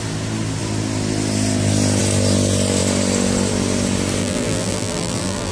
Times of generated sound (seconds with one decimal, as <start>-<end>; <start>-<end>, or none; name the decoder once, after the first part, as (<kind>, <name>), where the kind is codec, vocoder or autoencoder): 4.2-5.5 (vocoder, BigVGAN v2)